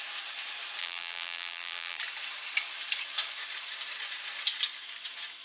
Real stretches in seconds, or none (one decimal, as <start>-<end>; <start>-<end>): 0.0-0.8; 2.0-5.4